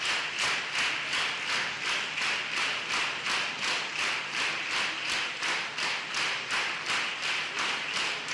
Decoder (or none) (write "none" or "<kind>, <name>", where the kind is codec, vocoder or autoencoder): none